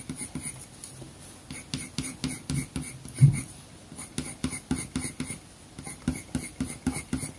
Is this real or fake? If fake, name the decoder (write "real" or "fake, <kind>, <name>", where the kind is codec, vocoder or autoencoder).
real